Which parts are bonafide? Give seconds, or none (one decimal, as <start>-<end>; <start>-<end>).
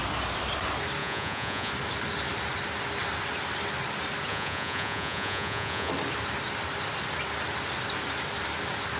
0.0-1.0; 1.7-4.3; 5.9-9.0